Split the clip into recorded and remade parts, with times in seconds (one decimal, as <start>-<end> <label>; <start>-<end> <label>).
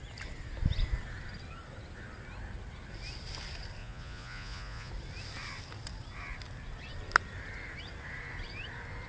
0.0-3.8 recorded; 3.8-4.9 remade; 4.9-9.1 recorded